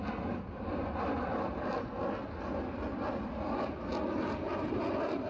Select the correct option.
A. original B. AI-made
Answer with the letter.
A